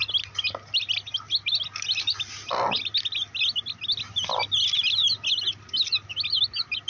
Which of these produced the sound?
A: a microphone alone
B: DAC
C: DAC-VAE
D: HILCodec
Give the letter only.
A